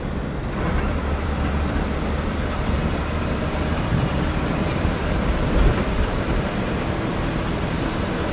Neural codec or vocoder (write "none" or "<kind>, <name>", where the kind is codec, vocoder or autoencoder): vocoder, BigVGAN v2